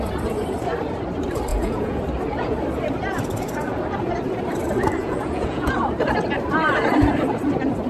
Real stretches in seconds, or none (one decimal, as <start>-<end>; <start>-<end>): 0.0-1.5; 2.0-5.0; 5.7-7.9